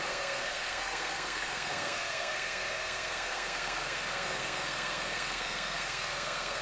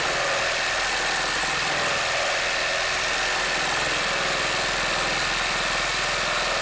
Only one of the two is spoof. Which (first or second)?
first